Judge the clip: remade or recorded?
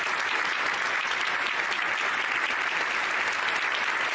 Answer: recorded